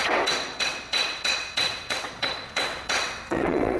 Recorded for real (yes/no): no